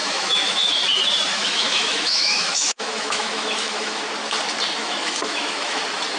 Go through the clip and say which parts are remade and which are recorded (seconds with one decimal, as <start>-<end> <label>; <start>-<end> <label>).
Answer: 0.0-0.8 remade; 0.8-1.3 recorded; 1.3-4.0 remade; 4.0-4.8 recorded; 4.8-5.8 remade; 5.8-6.2 recorded